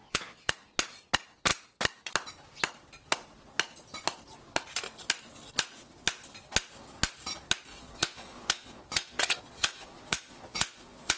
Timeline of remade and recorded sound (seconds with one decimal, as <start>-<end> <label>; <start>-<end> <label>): 0.0-0.5 remade; 0.5-7.7 recorded; 7.7-11.2 remade